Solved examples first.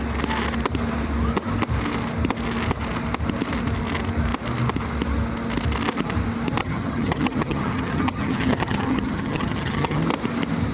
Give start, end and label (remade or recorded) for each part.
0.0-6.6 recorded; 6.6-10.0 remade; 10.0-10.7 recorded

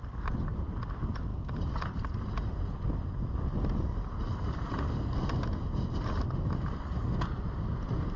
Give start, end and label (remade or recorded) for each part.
0.0-8.2 recorded